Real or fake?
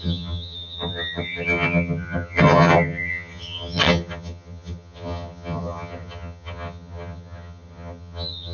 fake